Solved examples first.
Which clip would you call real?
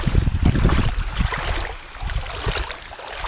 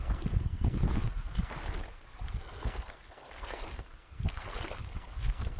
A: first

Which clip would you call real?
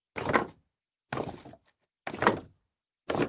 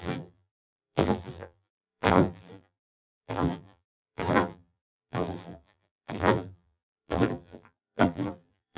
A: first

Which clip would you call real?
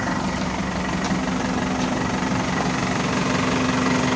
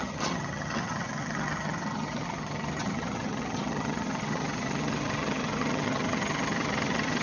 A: first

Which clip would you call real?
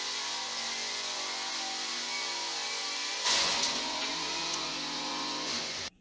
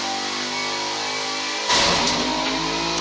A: second